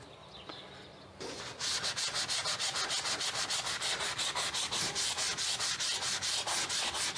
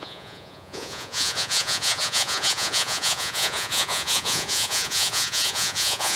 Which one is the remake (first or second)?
second